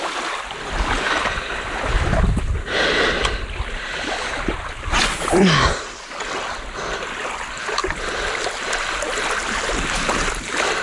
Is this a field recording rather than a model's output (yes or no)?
yes